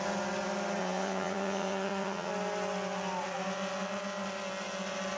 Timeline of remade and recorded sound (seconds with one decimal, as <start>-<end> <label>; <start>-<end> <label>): 0.0-0.8 recorded; 0.8-2.3 remade; 2.3-5.2 recorded